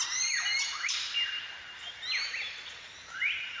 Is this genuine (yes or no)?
yes